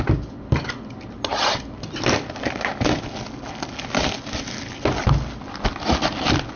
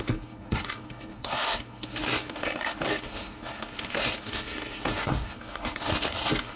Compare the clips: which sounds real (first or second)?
first